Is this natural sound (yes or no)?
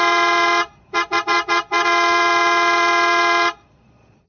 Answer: no